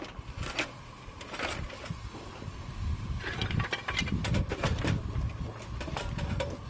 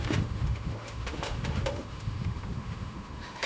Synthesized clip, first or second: second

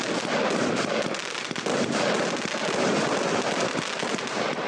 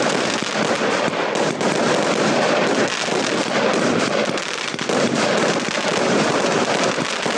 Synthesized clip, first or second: second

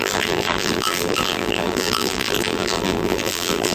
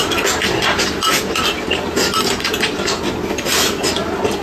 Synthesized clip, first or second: first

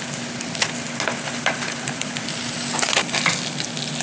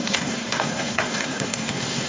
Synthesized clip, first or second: second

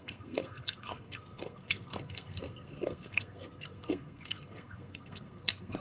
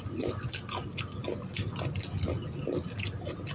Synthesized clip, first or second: first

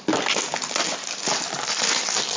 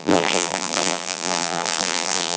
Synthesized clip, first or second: second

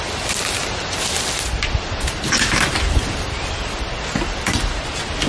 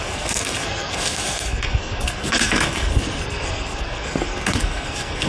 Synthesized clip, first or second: second